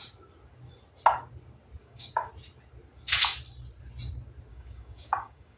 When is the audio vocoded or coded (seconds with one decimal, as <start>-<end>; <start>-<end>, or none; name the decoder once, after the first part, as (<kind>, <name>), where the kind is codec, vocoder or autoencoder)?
1.8-2.3 (codec, DAC); 4.5-5.6